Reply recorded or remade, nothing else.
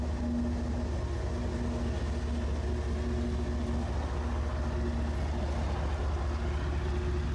recorded